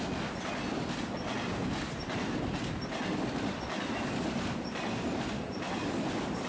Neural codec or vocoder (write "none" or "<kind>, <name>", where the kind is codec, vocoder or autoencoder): none